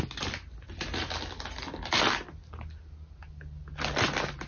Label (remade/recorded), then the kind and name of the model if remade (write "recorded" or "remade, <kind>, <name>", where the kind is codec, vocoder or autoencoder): recorded